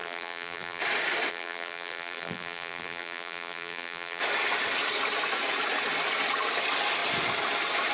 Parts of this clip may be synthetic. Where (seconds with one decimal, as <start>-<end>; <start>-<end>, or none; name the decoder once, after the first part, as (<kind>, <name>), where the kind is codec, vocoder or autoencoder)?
0.0-0.8 (vocoder, BigVGAN v2); 1.3-4.2